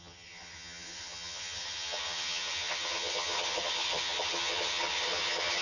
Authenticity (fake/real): fake